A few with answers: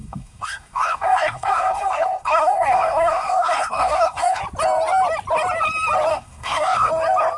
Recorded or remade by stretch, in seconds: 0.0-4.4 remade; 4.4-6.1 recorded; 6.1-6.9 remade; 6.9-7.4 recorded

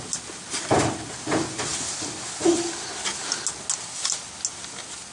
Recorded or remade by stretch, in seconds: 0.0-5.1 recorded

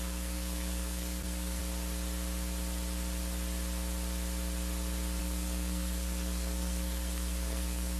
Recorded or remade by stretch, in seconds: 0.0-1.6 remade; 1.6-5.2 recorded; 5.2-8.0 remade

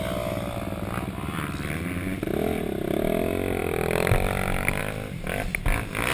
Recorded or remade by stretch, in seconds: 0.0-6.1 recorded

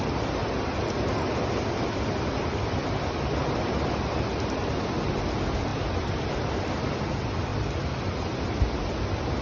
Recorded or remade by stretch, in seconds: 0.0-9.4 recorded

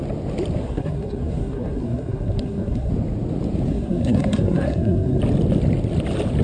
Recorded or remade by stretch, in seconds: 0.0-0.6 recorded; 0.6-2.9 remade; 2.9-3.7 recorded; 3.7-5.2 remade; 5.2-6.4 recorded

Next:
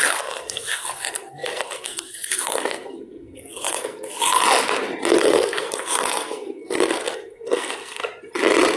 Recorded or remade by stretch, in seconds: 0.0-4.4 remade; 4.4-5.2 recorded; 5.2-8.0 remade; 8.0-8.8 recorded

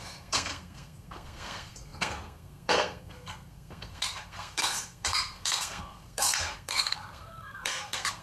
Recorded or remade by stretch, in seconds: 0.0-8.2 remade